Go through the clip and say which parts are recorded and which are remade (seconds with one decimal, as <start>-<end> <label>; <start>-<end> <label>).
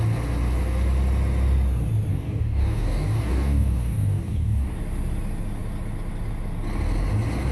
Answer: 0.0-2.1 recorded; 2.1-4.7 remade; 4.7-7.5 recorded